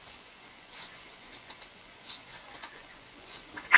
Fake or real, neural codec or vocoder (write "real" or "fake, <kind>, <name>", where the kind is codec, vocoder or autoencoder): fake, vocoder, Vocos